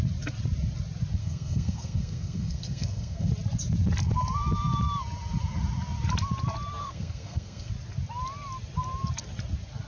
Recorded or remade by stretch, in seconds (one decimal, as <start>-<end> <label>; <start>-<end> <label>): 0.0-1.2 recorded; 1.2-3.3 remade; 3.3-6.8 recorded; 6.8-7.7 remade; 7.7-9.9 recorded